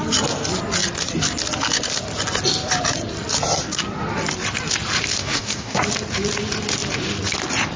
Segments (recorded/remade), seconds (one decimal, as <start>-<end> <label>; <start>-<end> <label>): 0.0-5.2 recorded; 5.2-5.8 remade; 5.8-7.8 recorded